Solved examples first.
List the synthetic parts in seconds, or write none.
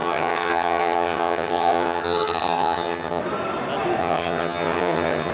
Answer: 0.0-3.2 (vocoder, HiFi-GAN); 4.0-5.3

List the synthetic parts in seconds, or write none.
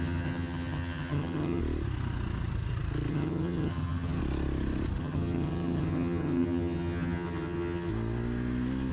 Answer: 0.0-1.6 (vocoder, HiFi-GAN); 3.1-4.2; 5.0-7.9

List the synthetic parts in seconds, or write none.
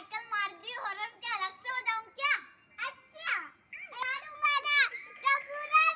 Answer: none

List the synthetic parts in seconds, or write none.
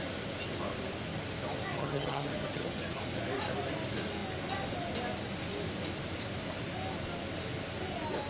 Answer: 1.7-3.0 (vocoder, HiFi-GAN)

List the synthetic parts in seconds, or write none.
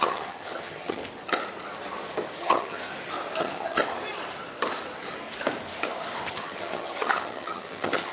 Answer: 0.0-1.0 (vocoder, HiFi-GAN); 2.4-2.9; 3.4-3.8; 6.3-8.1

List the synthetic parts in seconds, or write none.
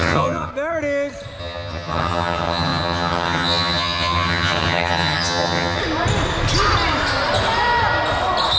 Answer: 0.0-0.5 (vocoder, HiFi-GAN); 1.4-5.8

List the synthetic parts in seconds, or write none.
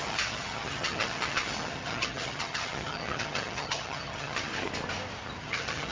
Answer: 0.0-4.5 (vocoder, HiFi-GAN); 5.4-5.9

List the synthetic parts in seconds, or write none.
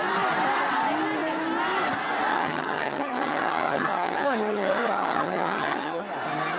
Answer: 2.3-6.0 (vocoder, HiFi-GAN)